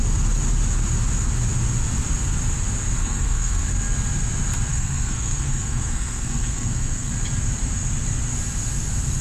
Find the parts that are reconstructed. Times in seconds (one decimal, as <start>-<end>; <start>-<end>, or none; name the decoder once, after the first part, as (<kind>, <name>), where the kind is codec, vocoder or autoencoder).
3.0-3.7 (codec, SNAC); 4.7-7.1